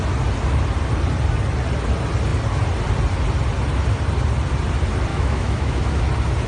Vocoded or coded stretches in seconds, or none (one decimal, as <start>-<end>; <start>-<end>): 5.1-6.0